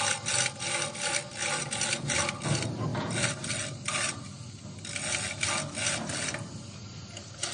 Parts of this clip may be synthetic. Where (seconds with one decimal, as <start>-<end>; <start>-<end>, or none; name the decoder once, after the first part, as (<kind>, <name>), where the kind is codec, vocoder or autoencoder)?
none